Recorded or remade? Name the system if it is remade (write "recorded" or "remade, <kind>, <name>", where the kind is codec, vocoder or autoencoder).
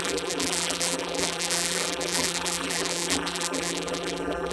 remade, vocoder, BigVGAN v2